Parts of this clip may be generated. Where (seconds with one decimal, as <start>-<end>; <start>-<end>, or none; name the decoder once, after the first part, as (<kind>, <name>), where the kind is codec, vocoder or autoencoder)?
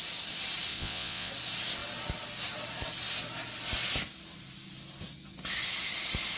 0.7-1.3 (vocoder, Vocos)